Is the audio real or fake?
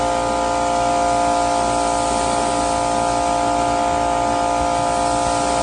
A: real